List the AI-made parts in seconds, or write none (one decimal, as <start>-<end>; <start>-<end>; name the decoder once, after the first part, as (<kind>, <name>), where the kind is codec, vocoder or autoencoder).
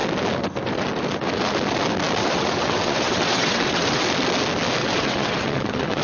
2.2-4.0 (vocoder, WaveNeXt); 4.8-6.0